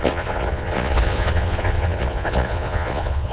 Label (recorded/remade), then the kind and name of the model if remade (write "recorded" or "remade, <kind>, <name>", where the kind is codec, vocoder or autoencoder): remade, vocoder, Vocos